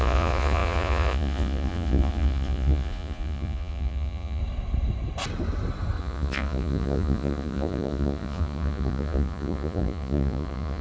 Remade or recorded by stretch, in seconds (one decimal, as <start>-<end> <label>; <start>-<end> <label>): 0.0-4.4 remade; 4.4-6.0 recorded; 6.0-10.8 remade